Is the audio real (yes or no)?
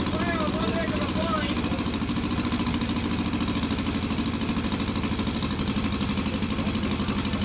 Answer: yes